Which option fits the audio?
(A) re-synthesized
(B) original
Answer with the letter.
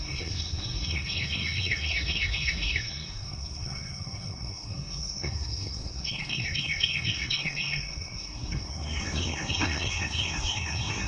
A